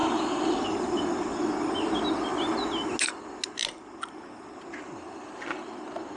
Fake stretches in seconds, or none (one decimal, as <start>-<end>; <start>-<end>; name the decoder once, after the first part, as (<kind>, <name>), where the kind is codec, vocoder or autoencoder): 0.0-0.6 (vocoder, BigVGAN v2)